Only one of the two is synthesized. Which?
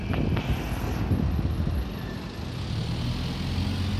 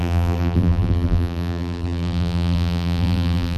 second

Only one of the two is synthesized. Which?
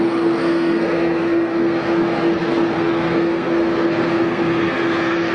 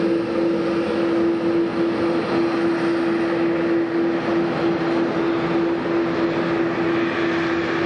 first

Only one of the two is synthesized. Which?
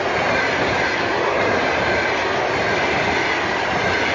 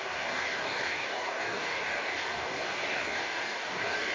second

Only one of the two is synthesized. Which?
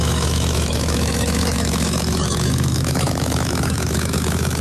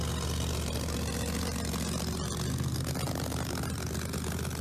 first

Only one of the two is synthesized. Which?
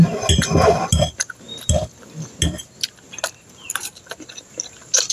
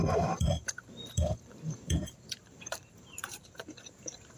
second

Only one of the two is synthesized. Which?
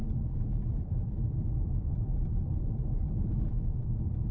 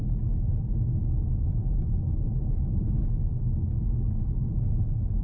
first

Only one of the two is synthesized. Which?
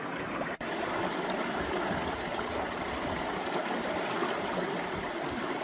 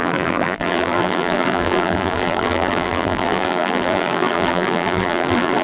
second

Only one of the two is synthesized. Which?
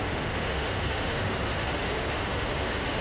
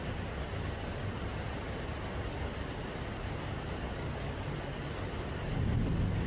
first